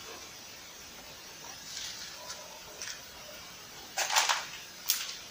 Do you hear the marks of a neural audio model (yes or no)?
no